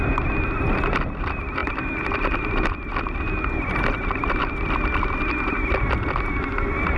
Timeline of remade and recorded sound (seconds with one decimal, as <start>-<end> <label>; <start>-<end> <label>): 0.0-1.6 recorded; 1.6-2.9 remade; 2.9-7.0 recorded